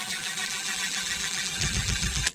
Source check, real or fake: fake